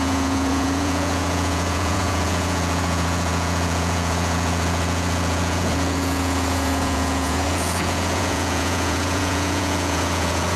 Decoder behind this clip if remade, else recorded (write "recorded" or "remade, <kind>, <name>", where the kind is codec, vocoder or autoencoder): remade, vocoder, Vocos